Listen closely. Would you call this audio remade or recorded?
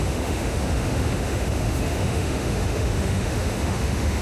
remade